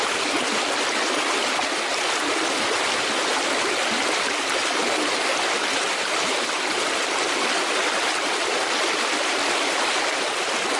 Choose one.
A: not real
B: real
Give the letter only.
B